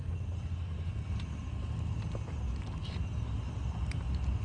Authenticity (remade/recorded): recorded